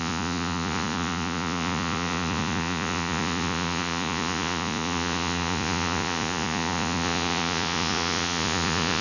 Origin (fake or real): fake